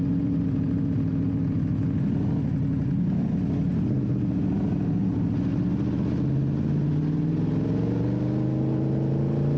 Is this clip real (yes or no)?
yes